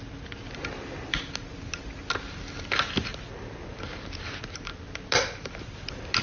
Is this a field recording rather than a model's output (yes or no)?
yes